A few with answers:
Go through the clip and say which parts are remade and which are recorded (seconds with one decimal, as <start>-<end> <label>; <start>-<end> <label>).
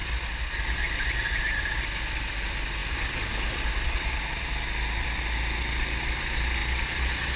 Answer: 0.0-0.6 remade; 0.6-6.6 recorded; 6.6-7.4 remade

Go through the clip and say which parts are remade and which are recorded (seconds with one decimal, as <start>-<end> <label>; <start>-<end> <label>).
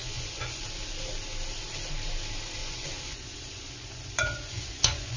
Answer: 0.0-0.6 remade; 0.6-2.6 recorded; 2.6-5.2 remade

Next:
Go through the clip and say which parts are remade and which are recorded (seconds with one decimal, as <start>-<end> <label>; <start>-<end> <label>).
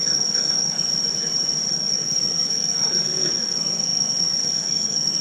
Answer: 0.0-0.9 remade; 0.9-1.7 recorded; 1.7-5.2 remade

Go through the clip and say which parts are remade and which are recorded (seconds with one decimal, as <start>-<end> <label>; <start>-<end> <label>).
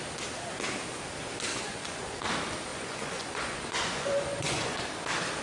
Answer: 0.0-1.5 recorded; 1.5-2.1 remade; 2.1-2.7 recorded; 2.7-4.8 remade; 4.8-5.4 recorded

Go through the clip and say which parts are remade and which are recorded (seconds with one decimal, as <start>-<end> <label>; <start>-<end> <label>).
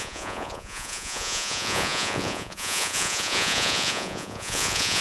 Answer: 0.0-5.0 remade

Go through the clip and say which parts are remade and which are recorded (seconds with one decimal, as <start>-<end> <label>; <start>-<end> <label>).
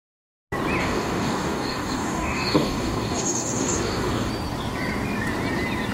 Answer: 0.0-0.8 recorded; 0.8-4.3 remade; 4.3-5.9 recorded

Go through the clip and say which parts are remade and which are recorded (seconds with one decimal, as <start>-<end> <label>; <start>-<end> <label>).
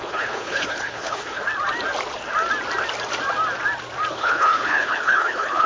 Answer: 0.0-1.4 remade; 1.4-4.1 recorded; 4.1-5.7 remade